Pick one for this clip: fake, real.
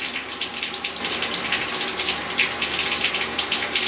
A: real